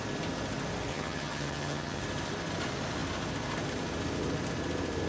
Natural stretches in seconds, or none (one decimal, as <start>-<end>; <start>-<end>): 0.0-0.9; 2.0-5.1